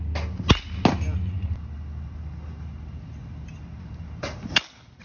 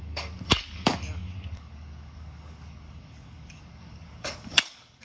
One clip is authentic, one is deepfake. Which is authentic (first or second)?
first